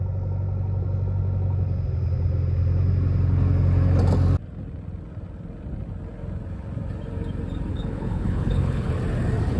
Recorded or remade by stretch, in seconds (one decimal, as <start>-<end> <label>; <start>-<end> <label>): 0.0-7.7 recorded; 7.7-8.9 remade; 8.9-9.6 recorded

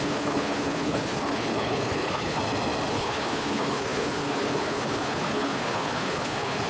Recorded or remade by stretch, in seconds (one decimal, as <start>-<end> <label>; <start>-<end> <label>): 0.0-2.4 remade; 2.4-2.9 recorded; 2.9-6.7 remade